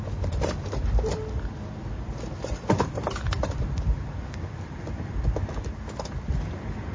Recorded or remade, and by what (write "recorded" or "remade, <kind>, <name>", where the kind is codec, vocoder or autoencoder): recorded